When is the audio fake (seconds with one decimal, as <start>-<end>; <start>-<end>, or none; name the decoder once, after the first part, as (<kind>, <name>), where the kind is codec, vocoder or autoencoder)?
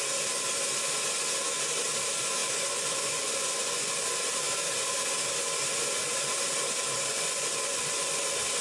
2.4-3.9 (vocoder, Vocos); 7.1-8.2